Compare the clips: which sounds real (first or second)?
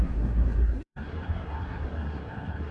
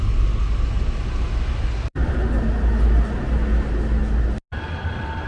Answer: second